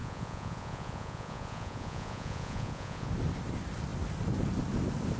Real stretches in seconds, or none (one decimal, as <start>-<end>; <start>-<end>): 3.1-5.2